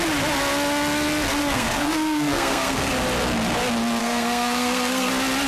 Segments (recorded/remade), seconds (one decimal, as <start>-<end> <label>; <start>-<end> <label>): 0.0-1.4 recorded; 1.4-2.9 remade; 2.9-4.0 recorded; 4.0-5.1 remade; 5.1-5.5 recorded

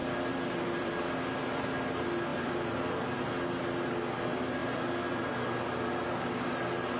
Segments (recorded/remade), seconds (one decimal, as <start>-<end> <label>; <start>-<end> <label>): 0.0-1.1 remade; 1.1-2.3 recorded; 2.3-3.2 remade; 3.2-4.6 recorded; 4.6-5.5 remade; 5.5-7.0 recorded